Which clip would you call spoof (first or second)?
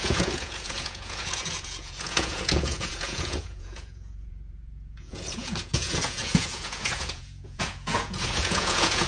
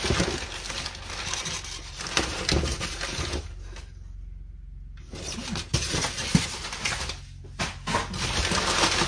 first